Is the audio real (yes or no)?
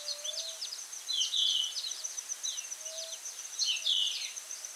yes